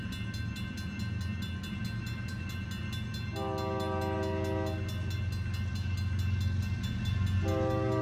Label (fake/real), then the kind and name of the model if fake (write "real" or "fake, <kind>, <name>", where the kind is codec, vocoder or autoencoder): real